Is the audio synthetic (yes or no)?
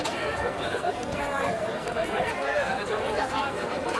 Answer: yes